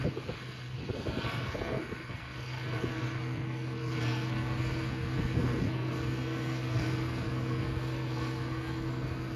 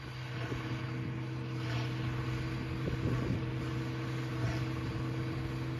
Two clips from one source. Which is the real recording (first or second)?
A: second